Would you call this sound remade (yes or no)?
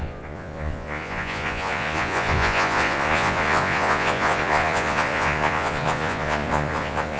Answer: yes